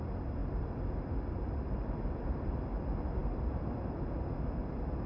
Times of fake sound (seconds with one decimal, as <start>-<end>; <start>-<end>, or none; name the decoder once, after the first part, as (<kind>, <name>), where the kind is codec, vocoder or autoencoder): none